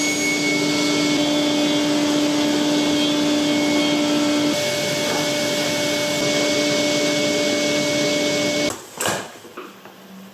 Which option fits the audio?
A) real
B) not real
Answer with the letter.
A